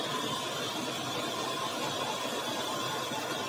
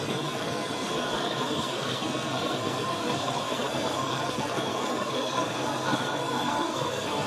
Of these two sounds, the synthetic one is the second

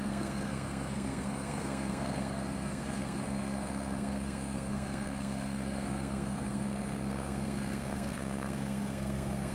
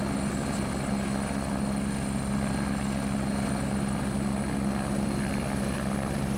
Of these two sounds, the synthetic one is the first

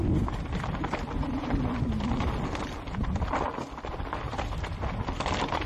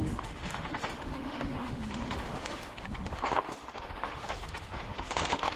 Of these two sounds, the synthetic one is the second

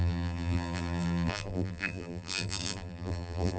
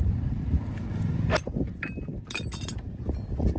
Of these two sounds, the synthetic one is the first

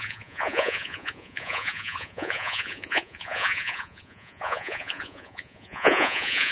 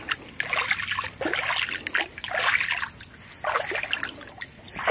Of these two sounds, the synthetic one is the first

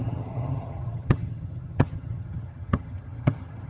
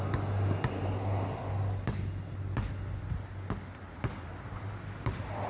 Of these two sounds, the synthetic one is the first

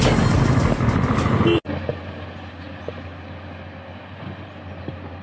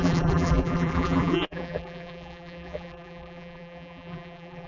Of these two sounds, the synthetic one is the second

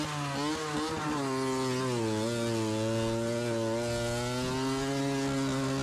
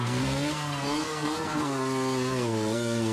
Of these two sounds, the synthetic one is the second